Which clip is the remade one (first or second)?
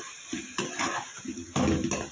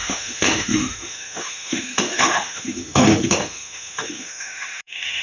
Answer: second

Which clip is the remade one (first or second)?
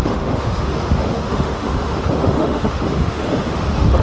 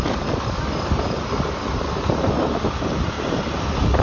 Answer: first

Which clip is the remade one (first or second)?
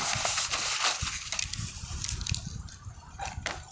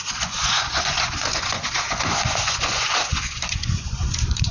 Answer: second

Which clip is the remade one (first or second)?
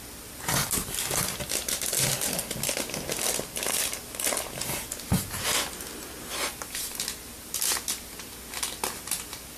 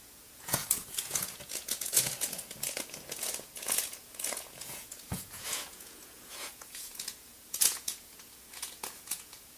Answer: second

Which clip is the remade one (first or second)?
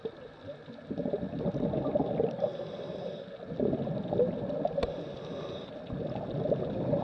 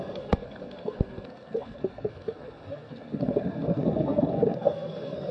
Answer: second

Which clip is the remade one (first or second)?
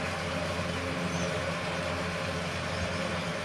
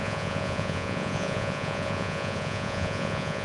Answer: second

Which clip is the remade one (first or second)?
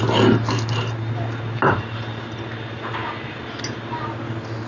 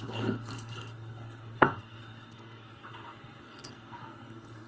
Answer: second